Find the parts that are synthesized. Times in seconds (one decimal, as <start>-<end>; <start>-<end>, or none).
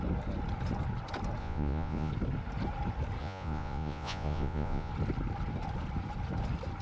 1.4-2.1; 3.2-4.9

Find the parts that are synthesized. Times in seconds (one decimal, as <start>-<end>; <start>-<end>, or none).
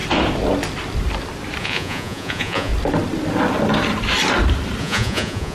1.6-2.7; 4.8-5.5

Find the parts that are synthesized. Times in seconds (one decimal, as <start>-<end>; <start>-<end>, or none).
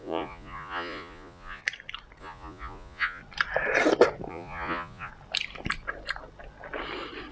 0.0-1.6; 2.2-3.2; 4.3-5.1